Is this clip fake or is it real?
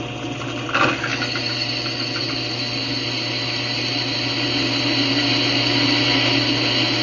real